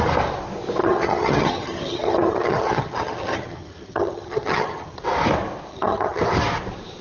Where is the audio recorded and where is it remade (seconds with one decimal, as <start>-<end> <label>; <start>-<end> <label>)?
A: 0.0-0.8 recorded; 0.8-5.0 remade; 5.0-5.7 recorded; 5.7-6.2 remade; 6.2-7.0 recorded